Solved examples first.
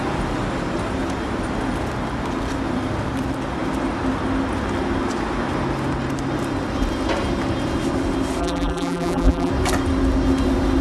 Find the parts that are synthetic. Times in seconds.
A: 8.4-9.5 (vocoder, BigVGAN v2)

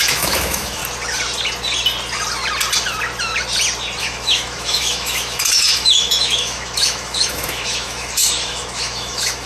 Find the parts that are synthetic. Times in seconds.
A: 0.0-0.8 (autoencoder, DAC-VAE); 4.0-9.5